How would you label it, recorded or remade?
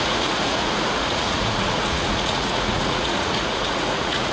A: remade